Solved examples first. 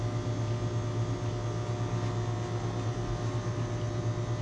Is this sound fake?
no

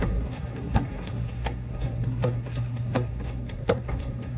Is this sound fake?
yes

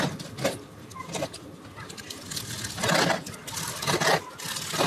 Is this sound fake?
no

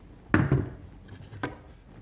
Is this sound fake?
no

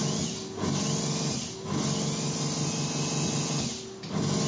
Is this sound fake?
no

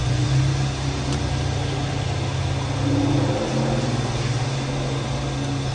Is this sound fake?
yes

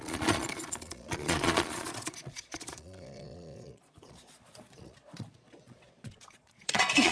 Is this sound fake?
yes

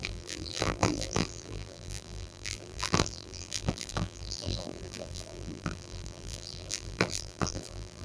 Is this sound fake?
yes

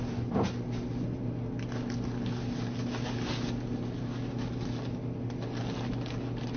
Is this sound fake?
no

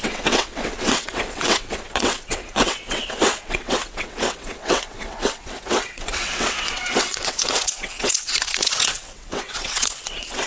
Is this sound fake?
yes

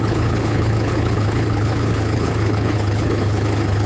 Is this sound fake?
yes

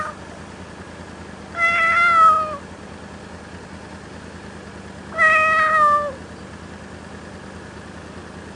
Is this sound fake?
no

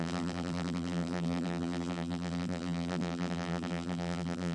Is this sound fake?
yes